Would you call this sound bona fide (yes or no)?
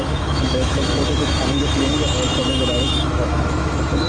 no